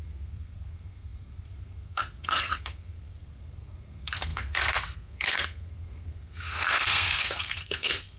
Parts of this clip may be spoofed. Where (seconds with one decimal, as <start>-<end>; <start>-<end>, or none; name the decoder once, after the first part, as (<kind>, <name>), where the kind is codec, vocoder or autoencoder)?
0.0-8.2 (codec, SNAC)